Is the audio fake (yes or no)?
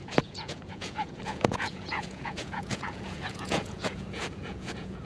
yes